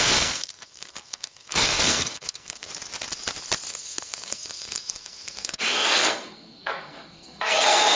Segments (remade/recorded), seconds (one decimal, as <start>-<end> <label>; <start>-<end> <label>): 0.0-2.7 remade; 2.7-3.7 recorded; 3.7-8.0 remade